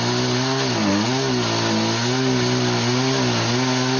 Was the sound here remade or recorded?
recorded